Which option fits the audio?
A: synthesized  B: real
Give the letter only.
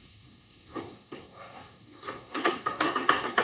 A